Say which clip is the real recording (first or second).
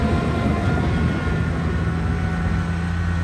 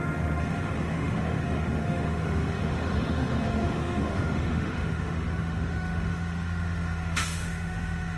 first